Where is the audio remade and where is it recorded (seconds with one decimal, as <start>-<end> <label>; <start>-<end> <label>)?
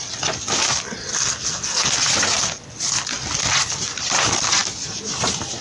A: 0.0-1.1 recorded; 1.1-1.9 remade; 1.9-5.6 recorded